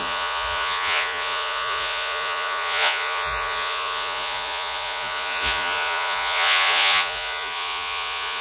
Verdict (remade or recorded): remade